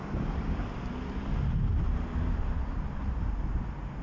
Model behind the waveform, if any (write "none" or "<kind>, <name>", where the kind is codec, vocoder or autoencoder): none